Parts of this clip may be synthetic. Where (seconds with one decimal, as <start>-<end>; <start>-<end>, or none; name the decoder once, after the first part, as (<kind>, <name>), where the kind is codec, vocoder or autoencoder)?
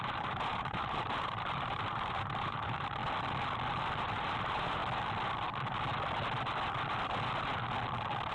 0.0-3.0 (vocoder, BigVGAN v2); 3.7-4.8